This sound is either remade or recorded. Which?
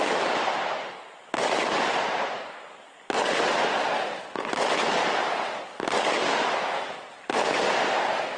recorded